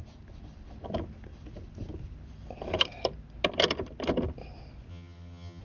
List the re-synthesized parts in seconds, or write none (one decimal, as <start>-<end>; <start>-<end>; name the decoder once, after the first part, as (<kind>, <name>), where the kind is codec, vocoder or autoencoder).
4.9-5.6 (vocoder, HiFi-GAN)